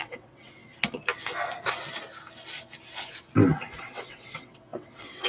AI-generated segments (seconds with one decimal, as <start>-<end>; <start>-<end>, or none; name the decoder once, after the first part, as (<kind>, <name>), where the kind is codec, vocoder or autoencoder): 0.0-0.6 (vocoder, WaveNeXt); 3.8-5.3